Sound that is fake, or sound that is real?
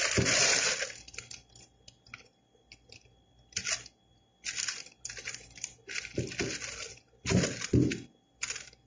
real